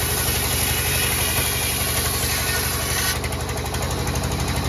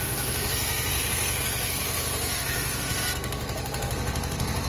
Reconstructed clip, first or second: second